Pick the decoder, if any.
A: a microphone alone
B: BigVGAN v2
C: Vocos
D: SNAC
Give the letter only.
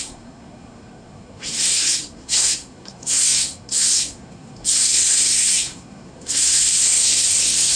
D